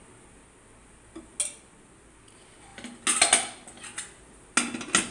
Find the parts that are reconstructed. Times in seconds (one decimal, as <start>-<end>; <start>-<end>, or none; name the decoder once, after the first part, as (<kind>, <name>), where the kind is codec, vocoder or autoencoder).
none